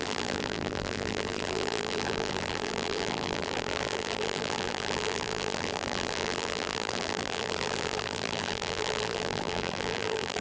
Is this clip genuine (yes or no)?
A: no